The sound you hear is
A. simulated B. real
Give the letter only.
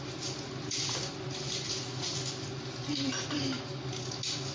B